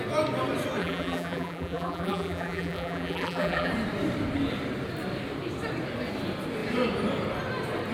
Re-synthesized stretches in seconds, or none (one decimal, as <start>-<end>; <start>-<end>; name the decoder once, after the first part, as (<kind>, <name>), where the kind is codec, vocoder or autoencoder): 0.8-3.7 (vocoder, BigVGAN v2)